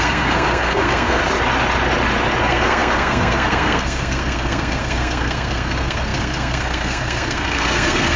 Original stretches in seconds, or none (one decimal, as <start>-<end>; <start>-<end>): 1.2-2.4